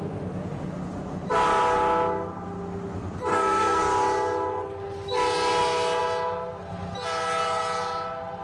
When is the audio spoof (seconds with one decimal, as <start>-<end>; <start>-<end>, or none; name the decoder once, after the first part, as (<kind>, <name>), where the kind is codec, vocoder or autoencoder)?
3.3-3.8 (codec, SNAC)